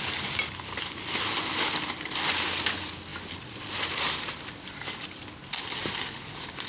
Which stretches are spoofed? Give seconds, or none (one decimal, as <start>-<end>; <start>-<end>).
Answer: 3.1-5.5